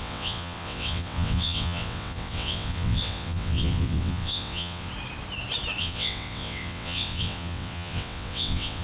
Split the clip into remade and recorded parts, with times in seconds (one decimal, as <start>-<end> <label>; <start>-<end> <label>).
0.0-4.9 remade; 4.9-5.8 recorded; 5.8-8.8 remade